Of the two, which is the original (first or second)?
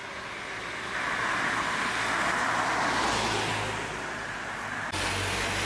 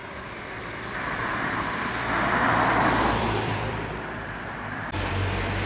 first